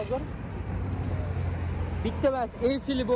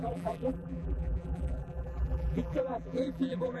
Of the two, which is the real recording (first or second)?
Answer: first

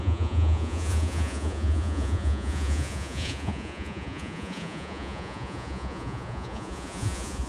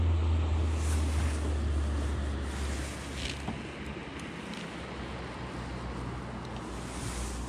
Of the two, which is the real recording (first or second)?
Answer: second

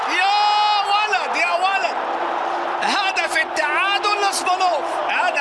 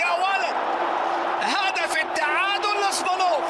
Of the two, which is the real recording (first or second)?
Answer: first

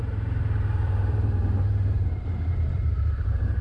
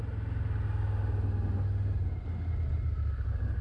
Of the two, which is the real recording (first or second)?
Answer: second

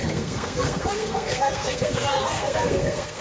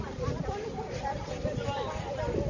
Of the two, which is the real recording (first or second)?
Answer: second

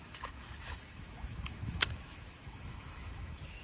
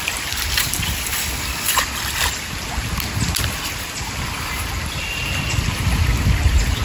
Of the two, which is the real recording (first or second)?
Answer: second